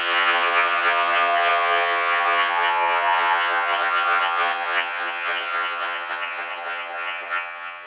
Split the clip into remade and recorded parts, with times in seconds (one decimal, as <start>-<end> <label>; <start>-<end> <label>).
0.0-7.9 remade